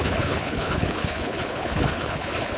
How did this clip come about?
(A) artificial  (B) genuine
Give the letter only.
A